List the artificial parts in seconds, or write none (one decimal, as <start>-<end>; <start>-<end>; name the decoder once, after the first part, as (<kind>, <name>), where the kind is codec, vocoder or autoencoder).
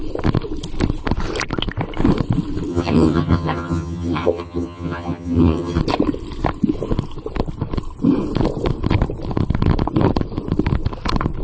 2.7-5.8 (vocoder, HiFi-GAN)